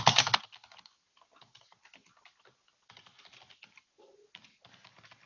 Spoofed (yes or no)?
no